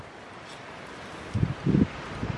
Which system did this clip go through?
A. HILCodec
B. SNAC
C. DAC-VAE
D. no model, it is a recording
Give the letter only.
D